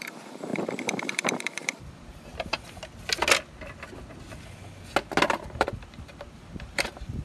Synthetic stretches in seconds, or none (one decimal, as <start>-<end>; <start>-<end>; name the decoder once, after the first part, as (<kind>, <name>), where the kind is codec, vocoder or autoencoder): 0.0-2.3 (vocoder, BigVGAN v2); 5.3-7.2